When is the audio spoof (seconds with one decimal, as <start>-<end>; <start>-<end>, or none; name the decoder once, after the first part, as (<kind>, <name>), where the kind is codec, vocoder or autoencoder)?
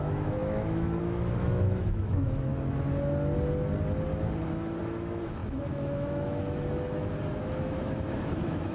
0.0-2.5 (autoencoder, DAC-VAE); 4.8-8.7